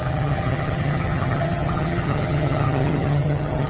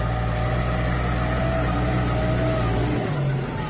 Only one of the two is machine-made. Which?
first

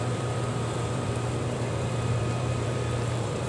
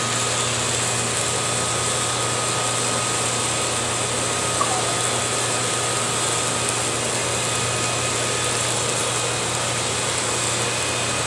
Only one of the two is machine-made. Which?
first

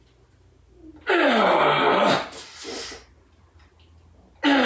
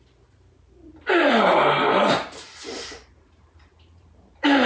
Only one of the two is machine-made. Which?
second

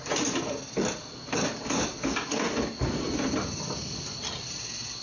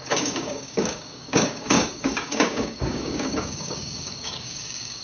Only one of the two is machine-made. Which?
second